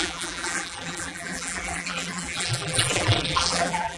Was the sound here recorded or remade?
remade